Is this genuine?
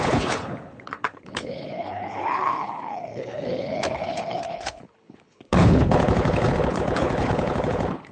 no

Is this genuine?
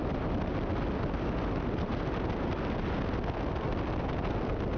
yes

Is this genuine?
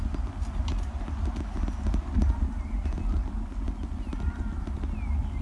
yes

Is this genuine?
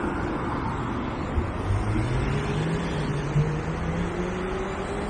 yes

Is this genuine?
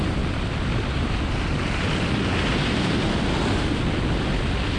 yes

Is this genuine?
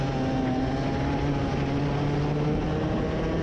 yes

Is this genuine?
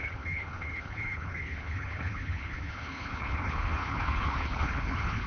no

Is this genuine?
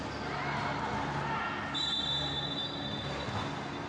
yes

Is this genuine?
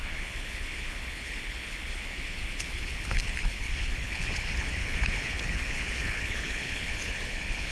no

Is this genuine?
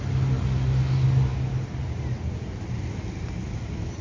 yes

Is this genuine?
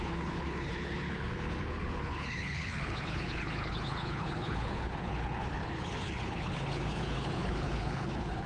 no